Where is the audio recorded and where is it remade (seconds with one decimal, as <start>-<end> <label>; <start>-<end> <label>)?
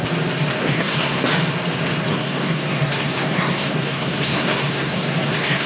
0.0-0.6 recorded; 0.6-1.2 remade; 1.2-2.1 recorded; 2.1-5.7 remade